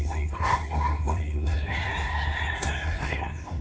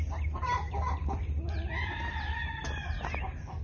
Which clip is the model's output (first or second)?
first